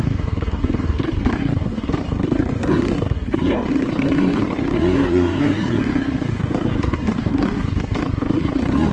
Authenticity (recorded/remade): remade